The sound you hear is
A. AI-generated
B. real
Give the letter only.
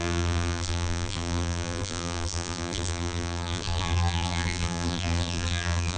A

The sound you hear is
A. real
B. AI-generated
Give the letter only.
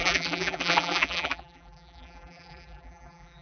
B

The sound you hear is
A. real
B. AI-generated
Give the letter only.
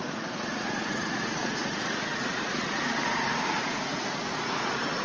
B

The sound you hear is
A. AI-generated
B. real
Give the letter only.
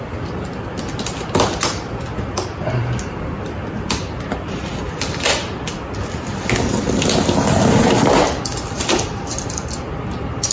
B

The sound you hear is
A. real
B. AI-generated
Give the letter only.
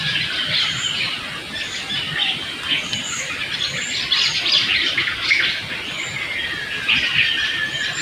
A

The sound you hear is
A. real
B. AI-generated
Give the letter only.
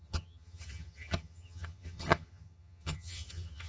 B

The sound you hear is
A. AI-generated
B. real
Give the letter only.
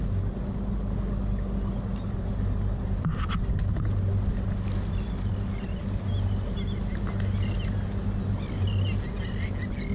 B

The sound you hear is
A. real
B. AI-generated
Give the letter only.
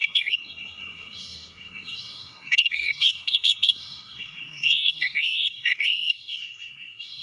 B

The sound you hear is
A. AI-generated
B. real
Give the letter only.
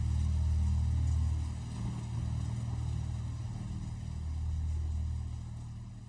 B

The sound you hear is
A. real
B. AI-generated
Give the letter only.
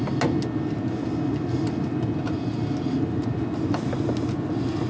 A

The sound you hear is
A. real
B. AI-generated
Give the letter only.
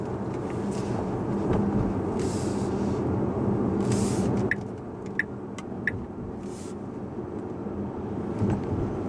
A